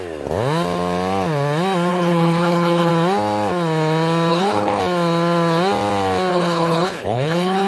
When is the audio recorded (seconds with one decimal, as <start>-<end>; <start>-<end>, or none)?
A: 0.0-1.9; 2.9-4.3; 4.8-6.3